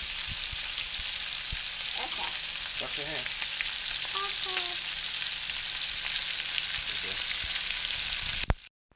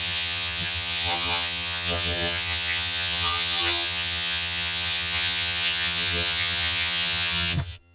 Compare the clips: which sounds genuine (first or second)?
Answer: first